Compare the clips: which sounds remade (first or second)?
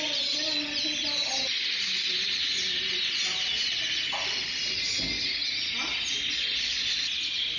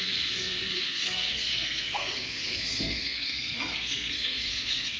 second